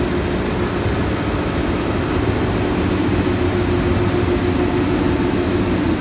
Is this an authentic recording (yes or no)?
yes